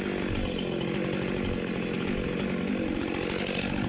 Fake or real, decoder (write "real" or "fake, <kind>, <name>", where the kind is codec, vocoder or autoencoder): real